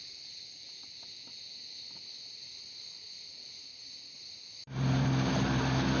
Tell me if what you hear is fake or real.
real